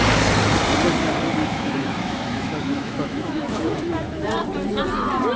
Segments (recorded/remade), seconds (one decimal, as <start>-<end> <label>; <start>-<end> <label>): 0.0-1.4 recorded; 1.4-4.2 remade; 4.2-5.4 recorded